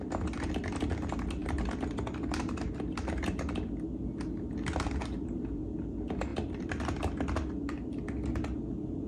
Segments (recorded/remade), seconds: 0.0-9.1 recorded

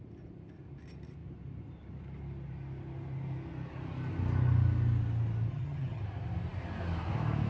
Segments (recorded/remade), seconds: 0.0-5.5 recorded; 5.5-6.0 remade; 6.0-7.5 recorded

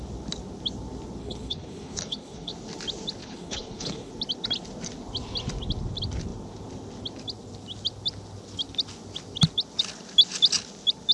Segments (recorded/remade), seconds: 0.0-1.2 recorded; 1.2-2.5 remade; 2.5-3.2 recorded; 3.2-4.1 remade; 4.1-11.1 recorded